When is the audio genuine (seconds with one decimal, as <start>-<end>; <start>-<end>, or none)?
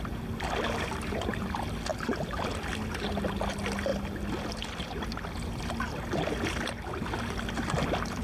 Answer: 0.0-8.2